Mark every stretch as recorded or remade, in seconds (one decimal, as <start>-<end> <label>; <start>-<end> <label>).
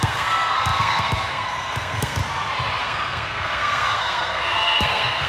0.0-2.2 remade; 2.2-2.8 recorded; 2.8-5.3 remade